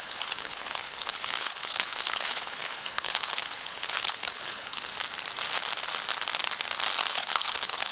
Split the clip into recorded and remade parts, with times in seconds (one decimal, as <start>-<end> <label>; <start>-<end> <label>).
0.0-4.9 remade; 4.9-7.1 recorded; 7.1-7.9 remade